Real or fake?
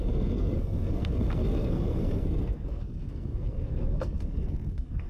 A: fake